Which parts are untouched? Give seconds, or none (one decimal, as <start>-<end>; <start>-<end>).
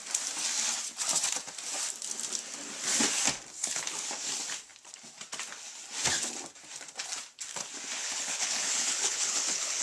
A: 0.0-3.6; 4.1-8.0